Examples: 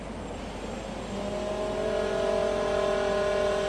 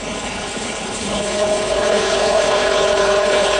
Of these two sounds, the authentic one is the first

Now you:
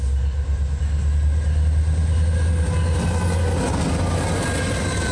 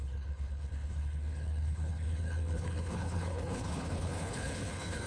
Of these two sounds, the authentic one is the first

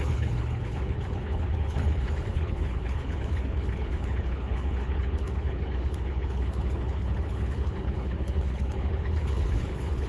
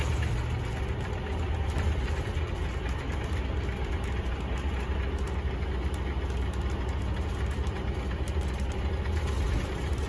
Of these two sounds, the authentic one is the second